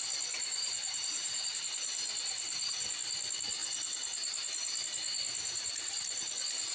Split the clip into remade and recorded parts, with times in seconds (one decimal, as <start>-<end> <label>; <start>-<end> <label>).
0.0-0.4 recorded; 0.4-1.6 remade; 1.6-6.7 recorded